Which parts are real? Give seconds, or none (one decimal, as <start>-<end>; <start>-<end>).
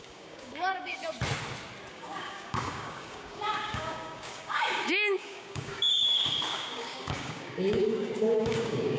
1.0-1.9